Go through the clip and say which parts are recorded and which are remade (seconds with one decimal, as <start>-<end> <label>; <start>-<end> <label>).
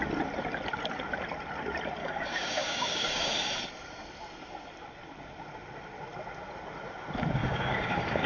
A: 0.0-2.0 recorded; 2.0-3.3 remade; 3.3-7.4 recorded; 7.4-8.3 remade